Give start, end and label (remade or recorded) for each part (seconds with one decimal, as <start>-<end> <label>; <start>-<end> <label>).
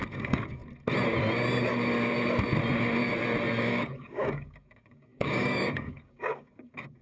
0.0-0.6 remade; 0.6-3.6 recorded; 3.6-7.0 remade